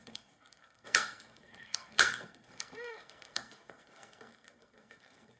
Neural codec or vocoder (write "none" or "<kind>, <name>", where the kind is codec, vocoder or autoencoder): codec, SNAC